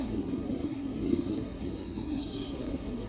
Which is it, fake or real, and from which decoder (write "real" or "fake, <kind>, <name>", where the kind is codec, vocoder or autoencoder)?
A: fake, codec, SNAC